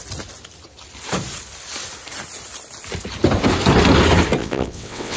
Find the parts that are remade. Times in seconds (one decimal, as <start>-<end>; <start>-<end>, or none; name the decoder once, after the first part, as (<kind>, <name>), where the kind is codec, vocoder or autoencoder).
4.4-5.2 (vocoder, WaveNeXt)